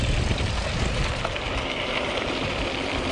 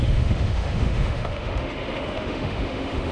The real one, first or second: first